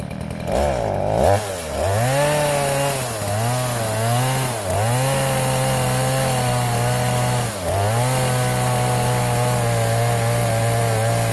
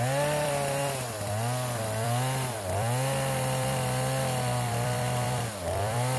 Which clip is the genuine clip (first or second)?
first